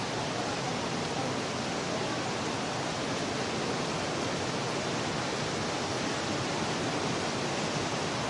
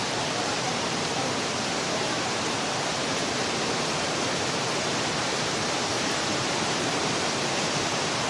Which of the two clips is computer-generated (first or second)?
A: second